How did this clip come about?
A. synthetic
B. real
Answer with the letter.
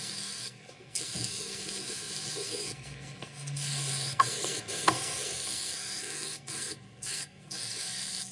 A